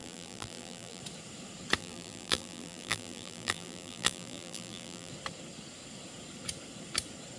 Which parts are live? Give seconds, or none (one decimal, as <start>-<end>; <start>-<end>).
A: 1.0-1.8; 5.1-7.4